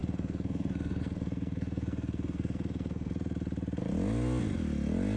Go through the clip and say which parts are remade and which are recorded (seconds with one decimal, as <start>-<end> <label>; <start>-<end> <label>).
0.0-3.1 remade; 3.1-5.2 recorded